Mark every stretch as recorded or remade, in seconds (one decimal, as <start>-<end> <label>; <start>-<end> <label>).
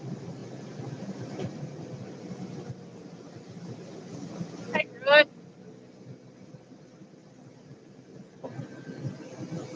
0.0-9.8 recorded